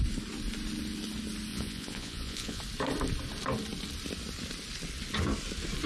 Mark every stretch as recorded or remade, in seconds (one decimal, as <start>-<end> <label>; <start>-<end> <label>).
0.0-1.5 recorded; 1.5-2.6 remade; 2.6-5.9 recorded